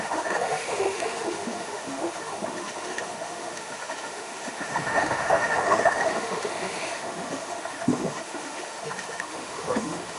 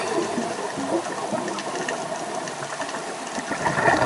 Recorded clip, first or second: second